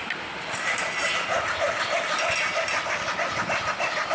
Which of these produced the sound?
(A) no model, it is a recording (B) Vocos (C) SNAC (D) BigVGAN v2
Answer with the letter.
A